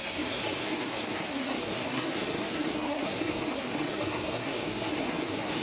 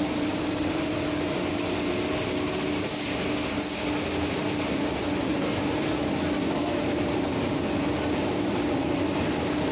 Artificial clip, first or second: first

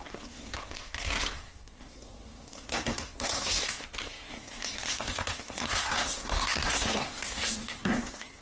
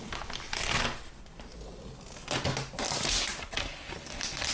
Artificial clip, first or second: first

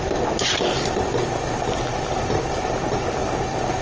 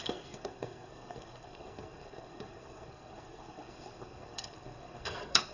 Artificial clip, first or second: second